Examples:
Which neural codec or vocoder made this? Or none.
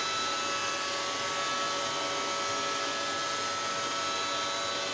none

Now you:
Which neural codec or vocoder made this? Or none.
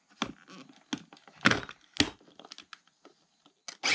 none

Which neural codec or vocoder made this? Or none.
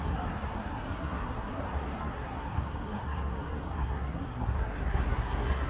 codec, SNAC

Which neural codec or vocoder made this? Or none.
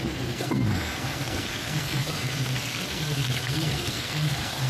codec, SNAC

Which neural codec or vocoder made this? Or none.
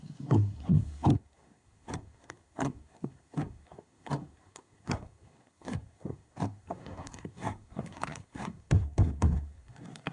codec, SNAC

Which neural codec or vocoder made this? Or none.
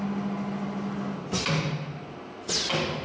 none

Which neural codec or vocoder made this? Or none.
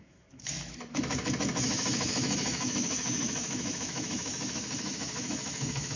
autoencoder, DAC-VAE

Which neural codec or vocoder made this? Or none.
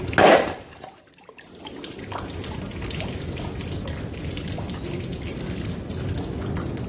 none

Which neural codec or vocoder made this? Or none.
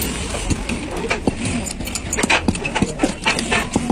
none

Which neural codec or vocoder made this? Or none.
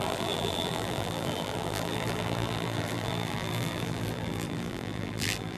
vocoder, BigVGAN v2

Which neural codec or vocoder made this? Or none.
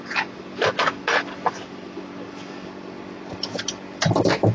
none